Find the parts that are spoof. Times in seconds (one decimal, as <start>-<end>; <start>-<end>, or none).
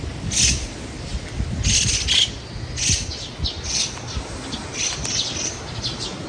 none